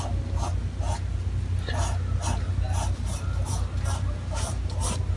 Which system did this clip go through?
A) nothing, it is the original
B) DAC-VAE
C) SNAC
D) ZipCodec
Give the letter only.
A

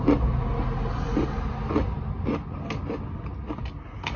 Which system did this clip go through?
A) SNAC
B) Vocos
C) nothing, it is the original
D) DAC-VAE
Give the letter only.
C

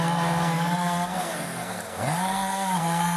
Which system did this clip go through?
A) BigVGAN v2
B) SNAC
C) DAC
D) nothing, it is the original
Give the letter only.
B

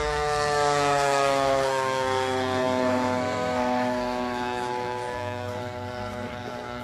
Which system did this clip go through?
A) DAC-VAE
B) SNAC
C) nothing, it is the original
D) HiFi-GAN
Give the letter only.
B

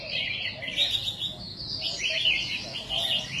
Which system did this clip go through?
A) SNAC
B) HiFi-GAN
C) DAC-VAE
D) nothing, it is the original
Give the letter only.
D